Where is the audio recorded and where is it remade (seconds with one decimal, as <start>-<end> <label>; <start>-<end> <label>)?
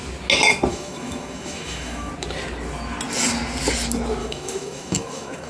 0.0-0.7 recorded; 0.7-2.1 remade; 2.1-4.2 recorded; 4.2-5.5 remade